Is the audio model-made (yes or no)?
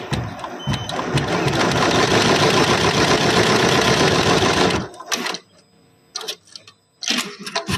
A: no